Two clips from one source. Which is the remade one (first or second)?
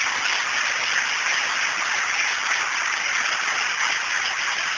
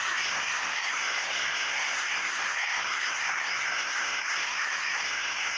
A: second